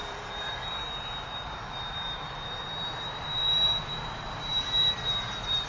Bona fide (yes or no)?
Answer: no